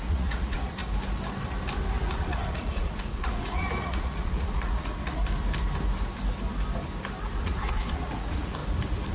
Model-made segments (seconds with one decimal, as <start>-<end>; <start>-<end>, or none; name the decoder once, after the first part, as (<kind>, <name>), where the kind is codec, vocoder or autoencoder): 0.0-0.8 (vocoder, Vocos); 1.9-5.2; 7.2-8.6